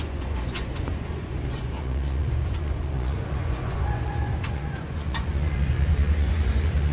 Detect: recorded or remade remade